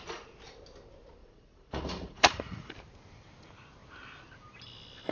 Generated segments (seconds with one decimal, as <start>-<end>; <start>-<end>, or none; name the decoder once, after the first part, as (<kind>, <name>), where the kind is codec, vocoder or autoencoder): 1.2-2.7 (vocoder, Vocos)